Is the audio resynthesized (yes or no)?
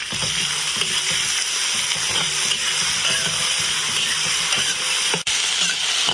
no